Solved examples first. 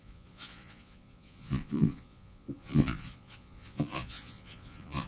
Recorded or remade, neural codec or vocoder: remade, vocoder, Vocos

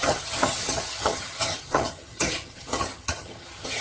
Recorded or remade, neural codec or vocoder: remade, vocoder, HiFi-GAN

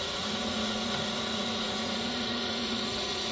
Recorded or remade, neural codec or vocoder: remade, vocoder, Vocos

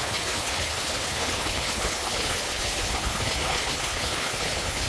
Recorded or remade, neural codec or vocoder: remade, codec, HILCodec